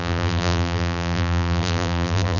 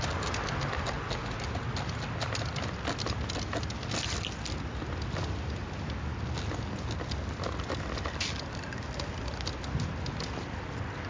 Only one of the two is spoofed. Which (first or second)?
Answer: first